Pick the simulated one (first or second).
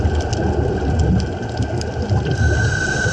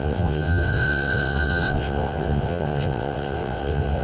second